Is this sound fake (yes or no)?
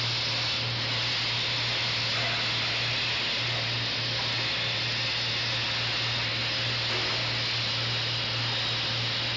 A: no